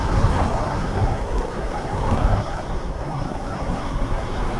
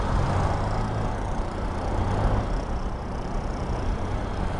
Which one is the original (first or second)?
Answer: second